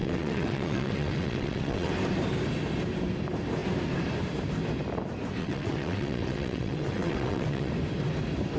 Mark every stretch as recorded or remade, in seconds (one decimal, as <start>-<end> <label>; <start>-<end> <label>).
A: 0.0-1.9 remade; 1.9-5.4 recorded; 5.4-7.7 remade; 7.7-8.6 recorded